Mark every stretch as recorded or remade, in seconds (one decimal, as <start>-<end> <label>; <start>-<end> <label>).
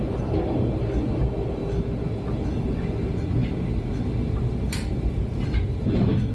0.0-6.3 recorded